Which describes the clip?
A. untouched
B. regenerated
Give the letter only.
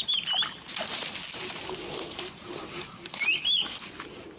A